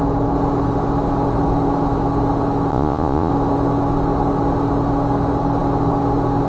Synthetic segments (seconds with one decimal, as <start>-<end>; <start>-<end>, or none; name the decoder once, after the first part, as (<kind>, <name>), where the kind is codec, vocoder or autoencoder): 2.7-3.3 (vocoder, Vocos)